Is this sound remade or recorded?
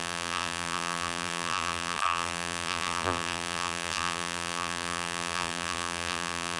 remade